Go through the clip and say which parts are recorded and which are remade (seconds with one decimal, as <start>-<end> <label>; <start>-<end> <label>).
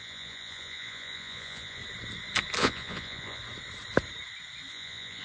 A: 0.0-1.8 remade; 1.8-2.6 recorded; 2.6-3.4 remade; 3.4-4.7 recorded; 4.7-5.2 remade